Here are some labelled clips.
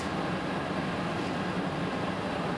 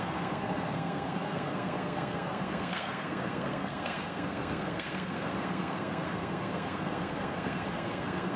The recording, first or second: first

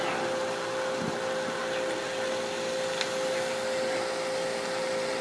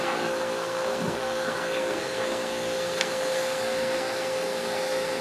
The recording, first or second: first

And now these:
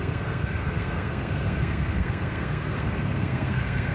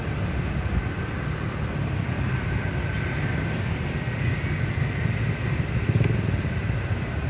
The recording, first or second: second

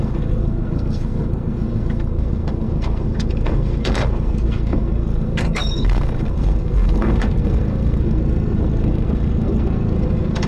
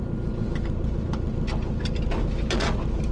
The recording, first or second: second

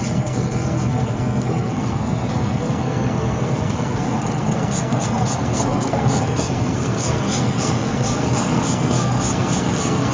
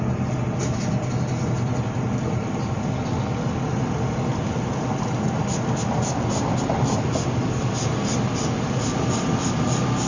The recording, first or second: second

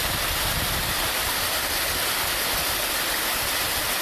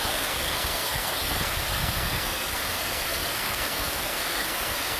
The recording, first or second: first